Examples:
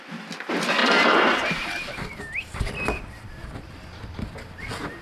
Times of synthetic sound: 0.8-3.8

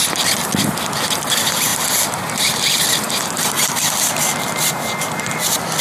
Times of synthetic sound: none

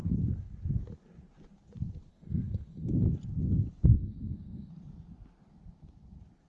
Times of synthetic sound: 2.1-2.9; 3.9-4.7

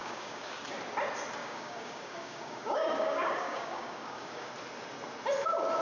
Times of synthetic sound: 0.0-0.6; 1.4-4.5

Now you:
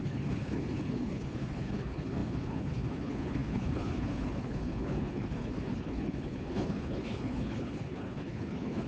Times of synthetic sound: 0.0-8.9